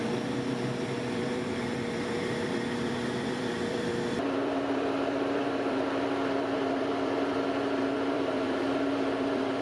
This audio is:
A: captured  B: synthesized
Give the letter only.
B